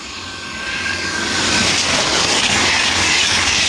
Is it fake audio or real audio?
fake